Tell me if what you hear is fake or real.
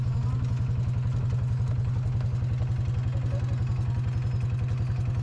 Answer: real